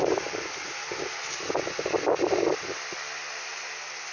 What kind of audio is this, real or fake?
real